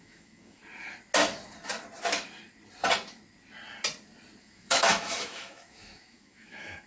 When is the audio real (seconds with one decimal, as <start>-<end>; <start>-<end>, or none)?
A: 0.6-4.4